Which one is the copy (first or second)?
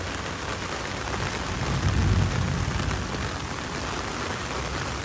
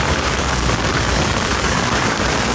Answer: second